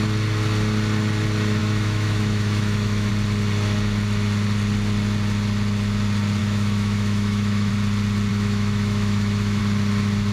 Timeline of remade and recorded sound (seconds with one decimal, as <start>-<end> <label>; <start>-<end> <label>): 0.0-1.6 recorded; 1.6-3.1 remade; 3.1-6.4 recorded; 6.4-7.7 remade; 7.7-8.3 recorded; 8.3-9.6 remade; 9.6-10.3 recorded